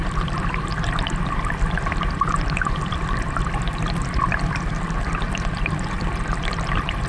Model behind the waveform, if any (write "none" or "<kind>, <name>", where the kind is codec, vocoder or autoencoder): none